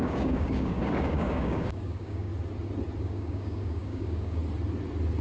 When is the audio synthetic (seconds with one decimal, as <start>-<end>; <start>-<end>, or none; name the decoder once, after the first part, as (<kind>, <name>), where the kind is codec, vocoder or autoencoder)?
0.0-2.3 (codec, DAC); 3.0-4.4